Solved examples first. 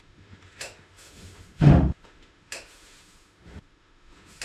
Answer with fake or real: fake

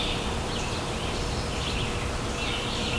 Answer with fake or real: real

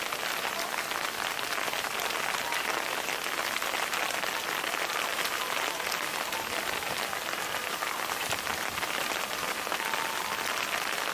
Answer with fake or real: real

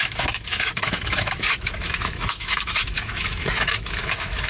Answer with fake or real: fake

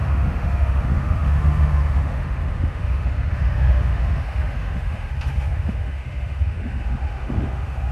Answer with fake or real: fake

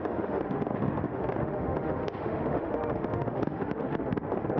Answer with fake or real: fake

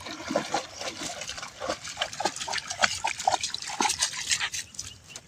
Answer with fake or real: real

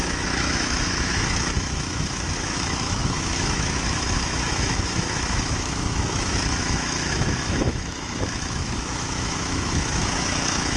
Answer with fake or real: fake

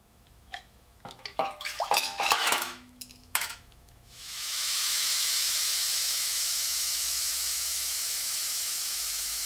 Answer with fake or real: fake